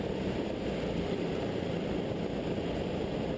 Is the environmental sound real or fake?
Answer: real